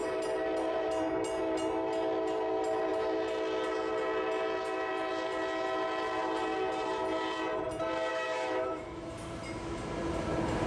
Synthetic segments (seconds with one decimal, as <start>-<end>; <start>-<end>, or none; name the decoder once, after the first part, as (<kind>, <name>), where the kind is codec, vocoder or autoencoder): 8.1-9.1 (autoencoder, DAC-VAE)